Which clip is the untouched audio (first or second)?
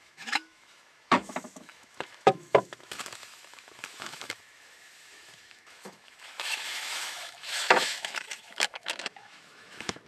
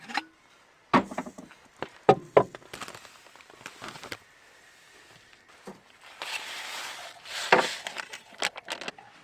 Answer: second